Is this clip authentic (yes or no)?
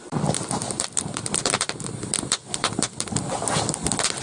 no